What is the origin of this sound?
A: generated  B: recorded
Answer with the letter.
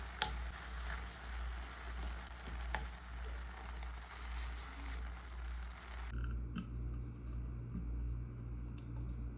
B